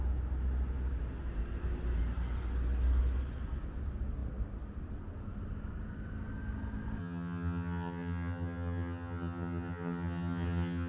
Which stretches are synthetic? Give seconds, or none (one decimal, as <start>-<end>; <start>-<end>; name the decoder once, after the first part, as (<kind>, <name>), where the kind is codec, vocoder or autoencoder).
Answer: 7.0-10.9 (vocoder, HiFi-GAN)